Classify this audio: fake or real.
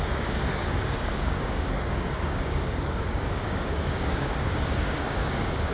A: fake